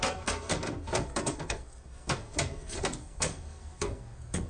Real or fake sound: fake